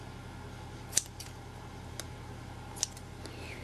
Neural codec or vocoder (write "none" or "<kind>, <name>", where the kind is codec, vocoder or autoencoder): none